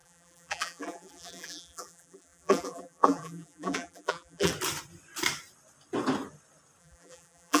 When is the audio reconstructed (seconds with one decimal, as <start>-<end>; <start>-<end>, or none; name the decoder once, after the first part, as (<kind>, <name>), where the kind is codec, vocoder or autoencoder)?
0.0-4.5 (vocoder, BigVGAN v2); 6.8-7.6